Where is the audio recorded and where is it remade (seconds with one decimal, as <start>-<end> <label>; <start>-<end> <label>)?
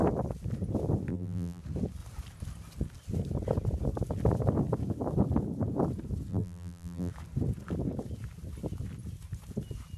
0.0-1.1 recorded; 1.1-1.6 remade; 1.6-6.3 recorded; 6.3-7.1 remade; 7.1-10.0 recorded